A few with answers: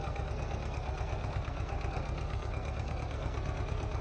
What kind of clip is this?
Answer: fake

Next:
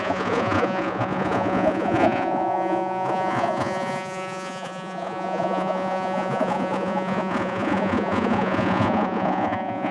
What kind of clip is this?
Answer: fake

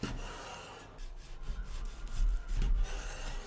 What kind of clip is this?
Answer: real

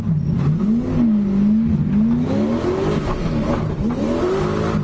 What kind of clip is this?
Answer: real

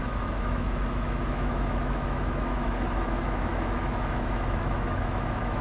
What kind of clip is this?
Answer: fake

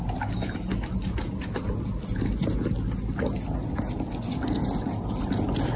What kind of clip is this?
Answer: real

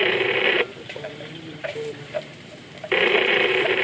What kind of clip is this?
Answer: fake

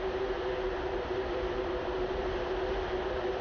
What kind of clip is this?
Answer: fake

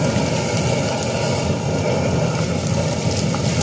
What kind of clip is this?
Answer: real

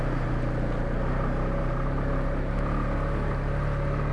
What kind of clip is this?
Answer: real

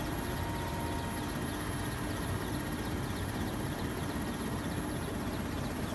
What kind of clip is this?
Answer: real